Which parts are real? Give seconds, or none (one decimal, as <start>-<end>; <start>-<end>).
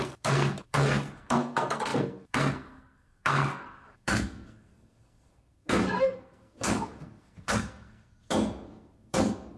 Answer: none